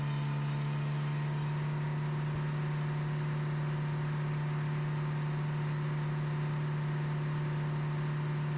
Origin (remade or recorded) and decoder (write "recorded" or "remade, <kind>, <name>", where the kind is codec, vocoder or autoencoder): recorded